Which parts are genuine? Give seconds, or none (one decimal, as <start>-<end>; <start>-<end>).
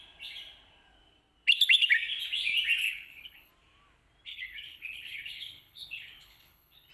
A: 0.0-2.8; 3.5-4.3